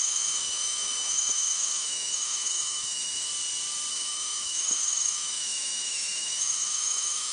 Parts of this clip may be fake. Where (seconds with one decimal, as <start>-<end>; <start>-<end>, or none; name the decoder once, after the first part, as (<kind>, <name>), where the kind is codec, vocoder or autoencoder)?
0.0-3.3 (autoencoder, DAC-VAE); 3.9-7.3